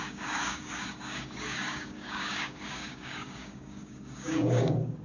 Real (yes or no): no